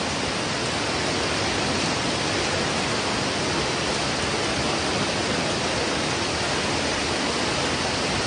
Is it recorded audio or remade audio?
recorded